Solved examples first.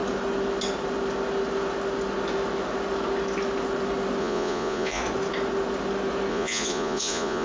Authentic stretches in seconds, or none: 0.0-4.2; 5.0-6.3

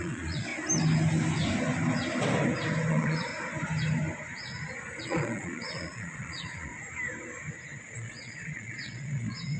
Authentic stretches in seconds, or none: 0.5-2.9; 3.3-5.0; 6.7-7.8

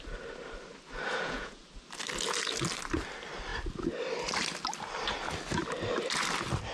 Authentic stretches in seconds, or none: 0.0-1.1; 1.6-6.7

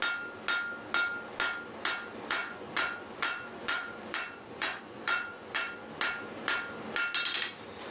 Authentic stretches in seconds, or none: 0.0-2.4; 5.7-7.9